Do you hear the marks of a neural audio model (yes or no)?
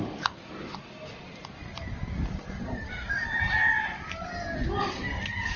no